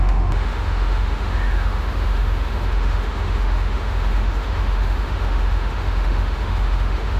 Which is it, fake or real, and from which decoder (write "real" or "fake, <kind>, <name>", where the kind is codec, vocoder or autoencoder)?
fake, autoencoder, DAC-VAE